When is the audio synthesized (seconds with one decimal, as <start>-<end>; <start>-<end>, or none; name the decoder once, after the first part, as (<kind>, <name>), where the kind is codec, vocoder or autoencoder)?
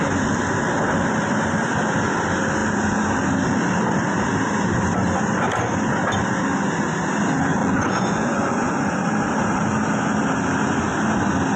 7.6-9.0 (vocoder, Vocos)